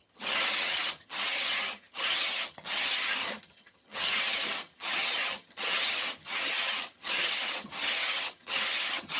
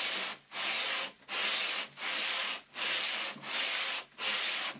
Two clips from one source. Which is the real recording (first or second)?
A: second